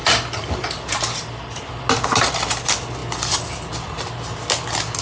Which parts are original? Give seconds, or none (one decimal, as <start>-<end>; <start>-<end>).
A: 0.0-5.0